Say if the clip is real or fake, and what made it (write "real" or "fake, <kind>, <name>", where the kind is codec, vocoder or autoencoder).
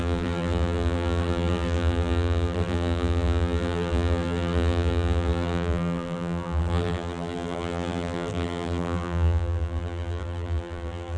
fake, vocoder, BigVGAN v2